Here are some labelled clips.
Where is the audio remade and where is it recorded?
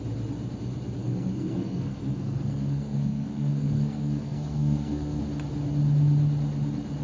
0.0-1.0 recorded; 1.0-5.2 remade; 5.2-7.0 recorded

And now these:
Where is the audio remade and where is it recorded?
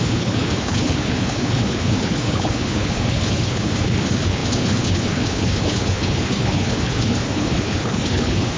0.0-8.6 remade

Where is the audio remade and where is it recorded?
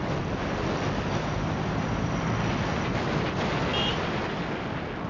0.0-3.7 recorded; 3.7-5.1 remade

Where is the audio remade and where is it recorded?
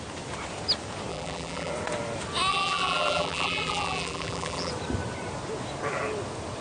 0.0-1.1 recorded; 1.1-1.7 remade; 1.7-2.5 recorded; 2.5-4.7 remade; 4.7-6.6 recorded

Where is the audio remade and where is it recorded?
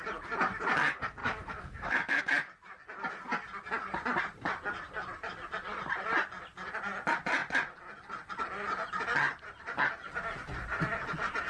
0.0-1.2 recorded; 1.2-2.2 remade; 2.2-11.5 recorded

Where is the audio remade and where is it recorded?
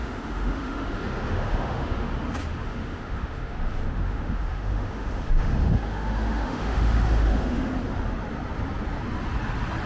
0.0-2.1 remade; 2.1-2.5 recorded; 2.5-7.7 remade; 7.7-9.9 recorded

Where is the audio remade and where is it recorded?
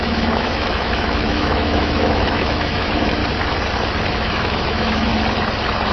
0.0-3.2 remade; 3.2-4.1 recorded; 4.1-5.1 remade; 5.1-5.9 recorded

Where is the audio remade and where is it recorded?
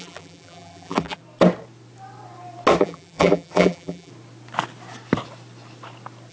0.0-1.2 remade; 1.2-2.8 recorded; 2.8-4.1 remade; 4.1-6.3 recorded